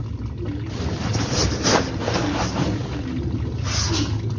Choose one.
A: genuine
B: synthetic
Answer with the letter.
A